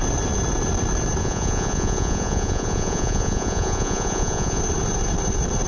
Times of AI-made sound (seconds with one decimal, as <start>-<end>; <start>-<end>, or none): 1.2-4.6